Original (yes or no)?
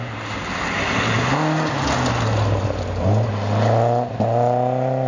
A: yes